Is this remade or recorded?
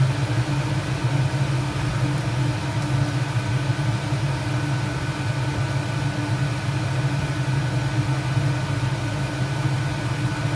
recorded